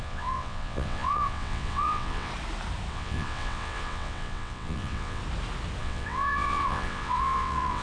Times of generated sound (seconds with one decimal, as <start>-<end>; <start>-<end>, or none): 0.0-2.3; 2.9-5.2; 5.8-7.8